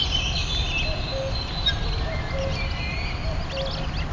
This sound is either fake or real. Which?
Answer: real